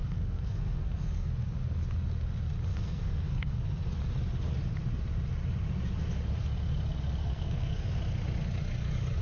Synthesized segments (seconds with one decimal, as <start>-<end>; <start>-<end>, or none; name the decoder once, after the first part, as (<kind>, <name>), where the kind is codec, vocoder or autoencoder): 0.0-1.3 (codec, SNAC); 2.7-3.6; 7.2-8.0